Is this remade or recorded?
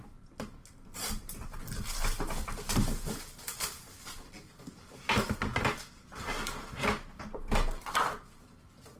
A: recorded